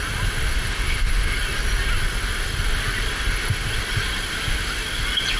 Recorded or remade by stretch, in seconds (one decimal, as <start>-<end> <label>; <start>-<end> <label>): 0.0-0.5 recorded; 0.5-1.4 remade; 1.4-3.1 recorded; 3.1-3.7 remade; 3.7-5.4 recorded